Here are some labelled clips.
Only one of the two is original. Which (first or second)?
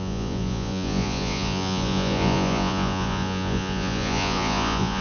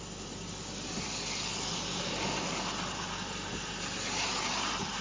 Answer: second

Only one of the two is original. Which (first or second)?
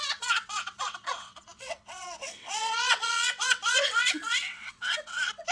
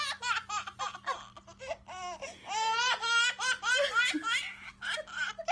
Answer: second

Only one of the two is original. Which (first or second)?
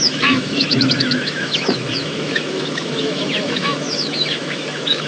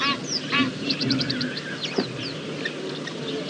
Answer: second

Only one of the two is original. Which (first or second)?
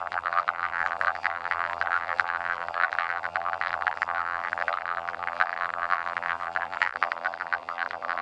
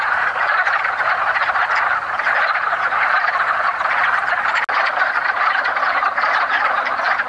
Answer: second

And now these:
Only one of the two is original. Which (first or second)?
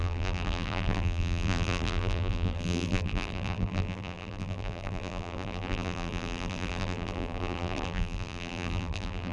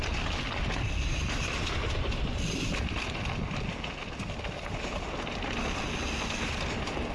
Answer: second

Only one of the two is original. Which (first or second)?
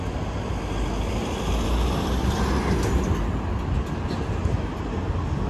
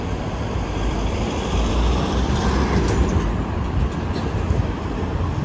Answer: first